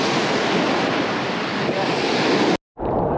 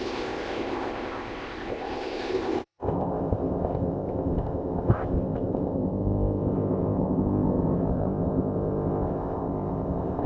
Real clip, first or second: first